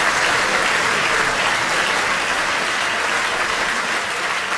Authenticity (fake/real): fake